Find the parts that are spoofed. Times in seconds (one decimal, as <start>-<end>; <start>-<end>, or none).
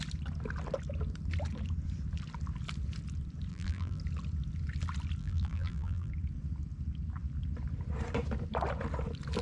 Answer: 3.5-4.0; 5.2-6.1